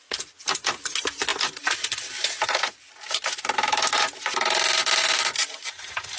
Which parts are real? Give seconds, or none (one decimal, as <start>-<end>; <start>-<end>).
0.0-6.2